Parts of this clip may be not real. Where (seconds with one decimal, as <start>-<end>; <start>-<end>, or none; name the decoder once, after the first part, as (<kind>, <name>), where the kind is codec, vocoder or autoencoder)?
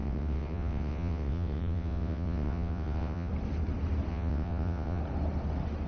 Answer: 0.0-3.3 (vocoder, WaveNeXt); 4.1-5.0